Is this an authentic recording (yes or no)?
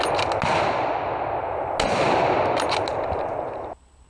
yes